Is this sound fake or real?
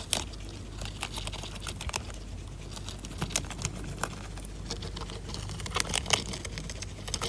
real